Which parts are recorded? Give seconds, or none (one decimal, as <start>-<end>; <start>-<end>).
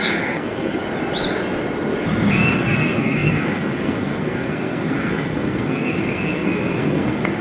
0.8-2.3